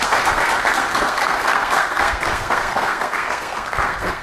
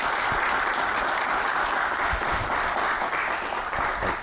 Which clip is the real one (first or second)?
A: second